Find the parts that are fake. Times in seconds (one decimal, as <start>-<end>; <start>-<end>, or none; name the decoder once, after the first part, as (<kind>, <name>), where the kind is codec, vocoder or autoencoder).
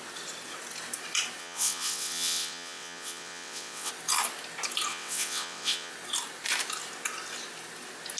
1.4-3.9 (vocoder, WaveNeXt); 4.9-5.9